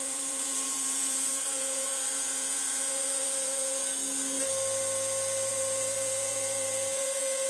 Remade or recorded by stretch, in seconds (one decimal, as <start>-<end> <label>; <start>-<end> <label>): 0.0-3.8 remade; 3.8-5.5 recorded; 5.5-7.5 remade